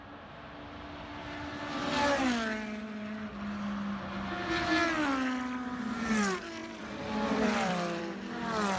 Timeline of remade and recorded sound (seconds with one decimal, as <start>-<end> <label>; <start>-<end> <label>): 0.0-6.6 recorded; 6.6-8.0 remade; 8.0-8.8 recorded